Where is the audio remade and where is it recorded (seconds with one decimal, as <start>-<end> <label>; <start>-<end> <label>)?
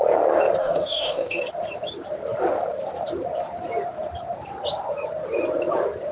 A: 0.0-0.6 recorded; 0.6-1.4 remade; 1.4-6.1 recorded